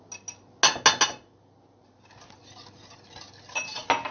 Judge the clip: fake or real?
real